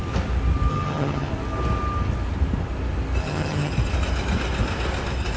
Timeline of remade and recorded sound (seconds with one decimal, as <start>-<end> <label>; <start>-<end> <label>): 0.0-0.7 recorded; 0.7-1.3 remade; 1.3-3.2 recorded; 3.2-3.7 remade; 3.7-5.4 recorded

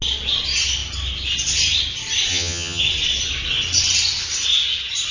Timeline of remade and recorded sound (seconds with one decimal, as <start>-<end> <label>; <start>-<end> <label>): 0.0-2.3 recorded; 2.3-2.8 remade; 2.8-5.1 recorded

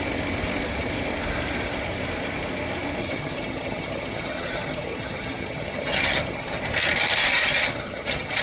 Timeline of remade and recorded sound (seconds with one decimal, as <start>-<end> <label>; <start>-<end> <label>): 0.0-3.0 recorded; 3.0-6.6 remade; 6.6-7.2 recorded; 7.2-8.4 remade

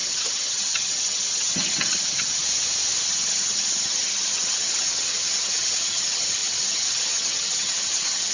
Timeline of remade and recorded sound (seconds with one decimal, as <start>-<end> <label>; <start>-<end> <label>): 0.0-2.4 remade; 2.4-3.0 recorded; 3.0-8.3 remade

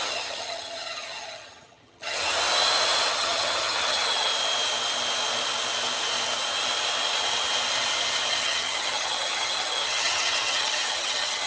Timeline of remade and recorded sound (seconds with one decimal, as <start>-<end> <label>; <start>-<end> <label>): 0.0-2.2 remade; 2.2-3.1 recorded; 3.1-4.3 remade; 4.3-8.4 recorded; 8.4-11.5 remade

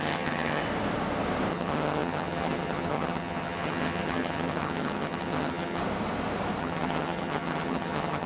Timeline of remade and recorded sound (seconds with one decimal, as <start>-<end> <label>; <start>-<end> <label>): 0.0-0.6 remade; 0.6-1.5 recorded; 1.5-5.8 remade; 5.8-6.6 recorded; 6.6-8.3 remade

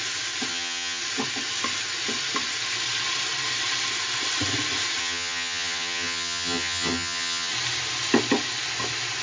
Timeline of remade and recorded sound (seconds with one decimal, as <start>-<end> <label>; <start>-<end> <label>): 0.0-0.5 recorded; 0.5-1.0 remade; 1.0-5.0 recorded; 5.0-7.5 remade; 7.5-9.2 recorded